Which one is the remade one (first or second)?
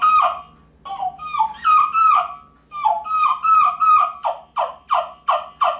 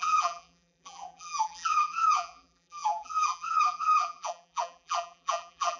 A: second